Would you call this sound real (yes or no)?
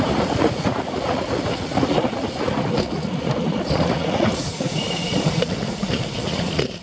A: no